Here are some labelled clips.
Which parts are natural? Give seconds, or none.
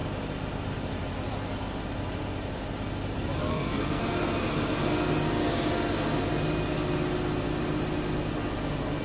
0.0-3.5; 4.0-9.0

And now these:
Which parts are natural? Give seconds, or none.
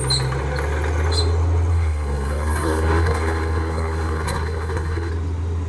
0.0-1.7; 5.1-5.7